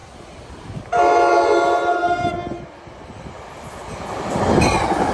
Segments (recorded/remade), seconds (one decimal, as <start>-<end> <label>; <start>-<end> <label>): 0.0-5.1 recorded